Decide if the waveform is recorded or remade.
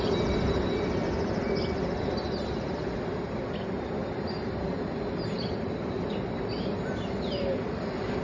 recorded